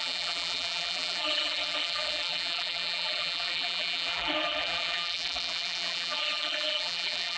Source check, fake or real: fake